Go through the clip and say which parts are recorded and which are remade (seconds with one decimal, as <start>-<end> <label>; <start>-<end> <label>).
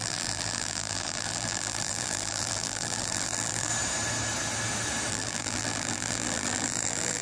0.0-3.7 remade; 3.7-5.1 recorded; 5.1-7.2 remade